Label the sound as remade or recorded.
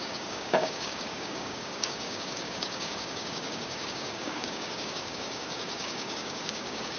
remade